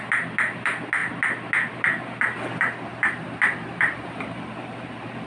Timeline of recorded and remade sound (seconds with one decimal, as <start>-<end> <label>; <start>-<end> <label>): 0.0-2.9 recorded; 2.9-4.0 remade; 4.0-5.3 recorded